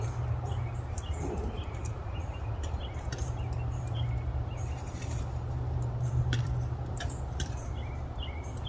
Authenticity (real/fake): fake